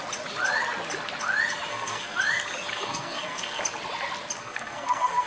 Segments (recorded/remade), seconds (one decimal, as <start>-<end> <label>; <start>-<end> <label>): 0.0-1.7 recorded; 1.7-2.2 remade; 2.2-2.7 recorded; 2.7-3.6 remade; 3.6-4.4 recorded; 4.4-5.3 remade